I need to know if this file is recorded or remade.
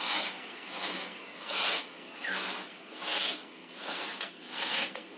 remade